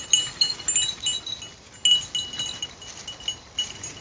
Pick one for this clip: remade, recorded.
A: recorded